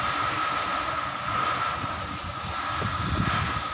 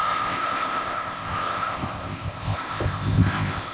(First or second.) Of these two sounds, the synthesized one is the second